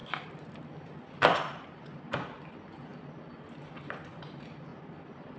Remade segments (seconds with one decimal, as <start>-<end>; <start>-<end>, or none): none